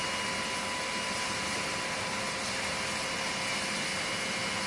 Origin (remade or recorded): recorded